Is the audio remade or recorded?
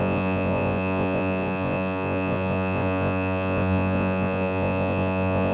remade